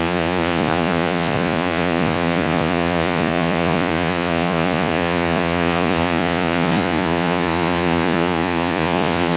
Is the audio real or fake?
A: fake